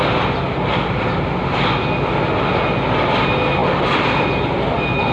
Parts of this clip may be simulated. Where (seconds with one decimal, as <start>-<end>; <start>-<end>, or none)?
none